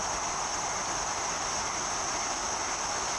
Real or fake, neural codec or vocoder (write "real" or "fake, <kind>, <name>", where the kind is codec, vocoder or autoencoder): real